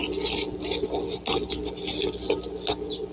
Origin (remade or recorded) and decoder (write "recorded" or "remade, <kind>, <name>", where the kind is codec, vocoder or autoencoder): recorded